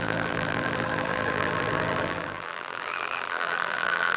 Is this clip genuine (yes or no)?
no